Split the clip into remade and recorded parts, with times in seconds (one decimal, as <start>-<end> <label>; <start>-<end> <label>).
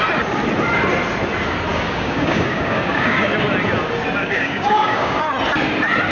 0.0-1.7 recorded; 1.7-3.3 remade; 3.3-4.2 recorded; 4.2-5.2 remade; 5.2-6.1 recorded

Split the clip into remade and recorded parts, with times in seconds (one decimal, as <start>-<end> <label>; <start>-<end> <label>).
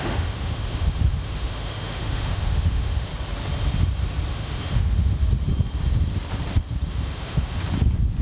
0.0-3.1 remade; 3.1-4.3 recorded; 4.3-5.2 remade; 5.2-6.9 recorded; 6.9-7.6 remade; 7.6-8.2 recorded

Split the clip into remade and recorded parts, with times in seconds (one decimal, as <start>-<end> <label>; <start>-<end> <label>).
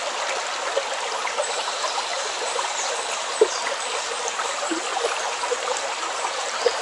0.0-2.1 recorded; 2.1-2.7 remade; 2.7-4.9 recorded; 4.9-6.8 remade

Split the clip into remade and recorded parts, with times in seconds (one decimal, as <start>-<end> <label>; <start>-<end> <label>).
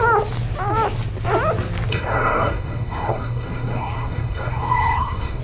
0.0-1.9 recorded; 1.9-5.4 remade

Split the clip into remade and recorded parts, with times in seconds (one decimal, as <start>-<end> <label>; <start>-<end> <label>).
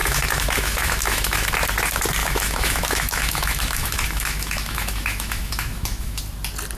0.0-1.5 remade; 1.5-2.2 recorded; 2.2-6.2 remade; 6.2-6.8 recorded